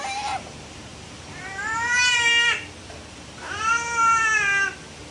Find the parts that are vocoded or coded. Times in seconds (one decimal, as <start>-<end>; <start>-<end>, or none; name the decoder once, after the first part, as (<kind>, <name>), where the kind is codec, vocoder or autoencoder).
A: 0.0-2.3 (vocoder, BigVGAN v2); 3.1-3.7